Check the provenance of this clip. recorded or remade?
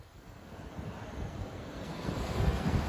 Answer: remade